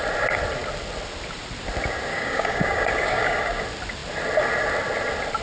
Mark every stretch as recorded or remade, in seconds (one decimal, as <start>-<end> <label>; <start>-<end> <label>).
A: 0.0-2.1 recorded; 2.1-3.6 remade; 3.6-5.4 recorded